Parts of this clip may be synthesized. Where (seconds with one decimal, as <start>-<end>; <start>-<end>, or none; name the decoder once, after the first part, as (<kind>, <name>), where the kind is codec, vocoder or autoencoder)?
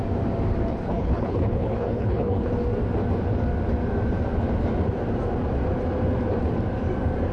0.7-2.5 (codec, HILCodec)